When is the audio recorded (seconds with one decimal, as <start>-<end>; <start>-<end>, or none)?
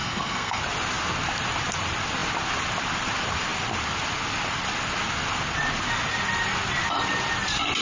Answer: 0.6-7.8